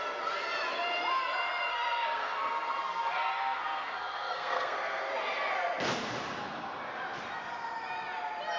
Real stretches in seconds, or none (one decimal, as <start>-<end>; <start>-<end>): 0.0-1.7; 5.1-8.6